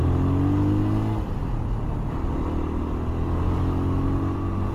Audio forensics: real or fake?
real